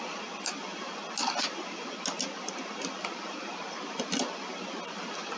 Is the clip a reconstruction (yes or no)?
no